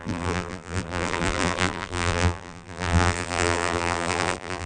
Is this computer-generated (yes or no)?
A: yes